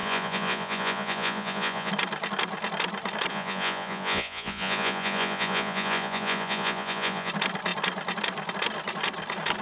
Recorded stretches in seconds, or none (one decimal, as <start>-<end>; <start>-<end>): 1.9-3.3; 7.3-9.6